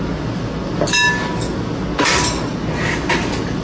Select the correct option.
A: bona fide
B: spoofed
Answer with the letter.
A